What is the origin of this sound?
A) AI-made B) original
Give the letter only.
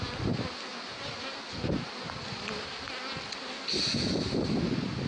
B